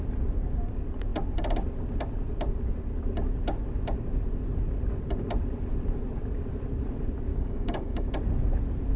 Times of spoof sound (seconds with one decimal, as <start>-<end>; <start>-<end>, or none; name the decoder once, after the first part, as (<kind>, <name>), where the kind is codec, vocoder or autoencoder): 7.3-8.1 (codec, DAC)